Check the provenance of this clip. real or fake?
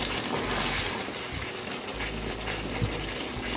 real